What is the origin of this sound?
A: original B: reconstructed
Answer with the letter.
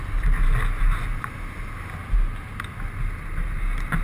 A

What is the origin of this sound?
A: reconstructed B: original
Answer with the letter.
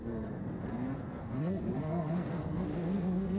A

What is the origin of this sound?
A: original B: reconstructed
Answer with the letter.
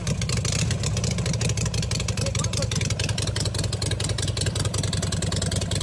A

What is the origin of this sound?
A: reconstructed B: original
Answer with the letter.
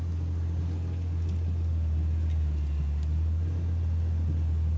B